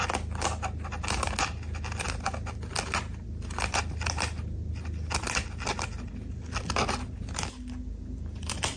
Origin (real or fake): real